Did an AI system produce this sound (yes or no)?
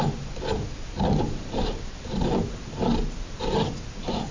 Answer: no